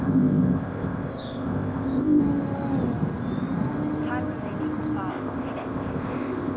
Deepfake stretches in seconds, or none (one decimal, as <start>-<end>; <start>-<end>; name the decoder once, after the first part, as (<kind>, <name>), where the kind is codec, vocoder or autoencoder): 0.0-2.2 (codec, ZipCodec); 5.1-6.6